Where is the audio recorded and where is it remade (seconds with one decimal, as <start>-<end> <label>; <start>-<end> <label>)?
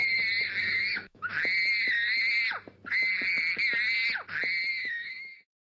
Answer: 0.0-0.6 recorded; 0.6-1.3 remade; 1.3-4.7 recorded; 4.7-5.6 remade